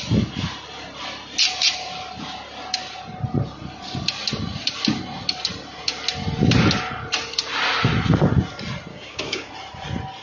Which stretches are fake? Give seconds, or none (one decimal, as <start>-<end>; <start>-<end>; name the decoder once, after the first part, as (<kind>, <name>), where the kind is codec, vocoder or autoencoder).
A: 8.9-9.5 (codec, DAC)